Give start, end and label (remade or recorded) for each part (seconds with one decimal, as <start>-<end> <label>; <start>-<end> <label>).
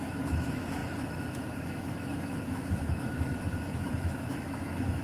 0.0-5.0 remade